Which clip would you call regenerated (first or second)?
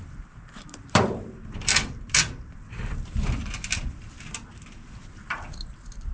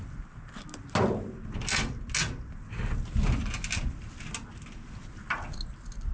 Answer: first